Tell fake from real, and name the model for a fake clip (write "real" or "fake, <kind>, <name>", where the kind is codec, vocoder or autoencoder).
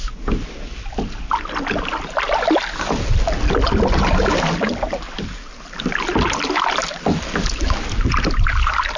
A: real